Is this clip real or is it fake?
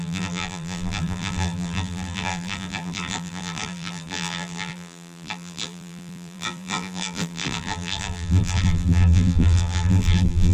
fake